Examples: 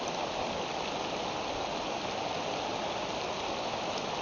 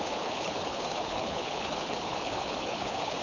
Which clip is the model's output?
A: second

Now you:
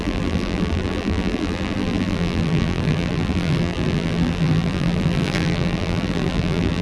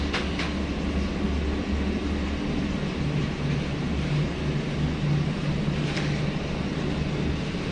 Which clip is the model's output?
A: first